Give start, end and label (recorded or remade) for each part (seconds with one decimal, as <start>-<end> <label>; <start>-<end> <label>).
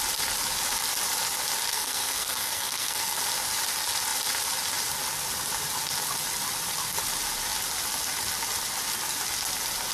0.0-1.7 recorded; 1.7-3.2 remade; 3.2-9.9 recorded